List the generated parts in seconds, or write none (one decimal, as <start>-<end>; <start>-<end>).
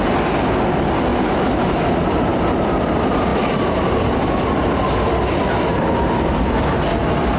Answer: none